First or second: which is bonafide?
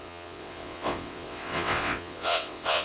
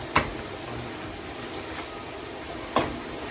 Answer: second